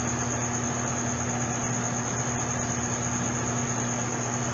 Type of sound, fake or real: real